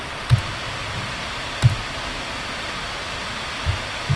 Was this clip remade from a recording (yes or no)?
no